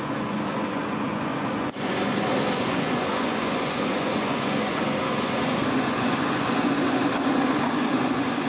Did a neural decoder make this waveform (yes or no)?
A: yes